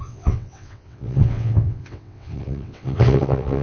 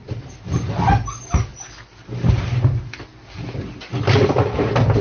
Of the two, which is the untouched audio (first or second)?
second